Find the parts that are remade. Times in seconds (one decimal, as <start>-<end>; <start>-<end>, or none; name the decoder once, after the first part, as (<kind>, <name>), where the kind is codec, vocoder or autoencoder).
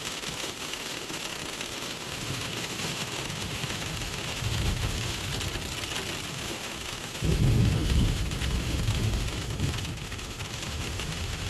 0.0-5.3 (autoencoder, DAC-VAE); 6.3-11.5